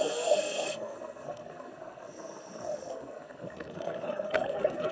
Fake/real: fake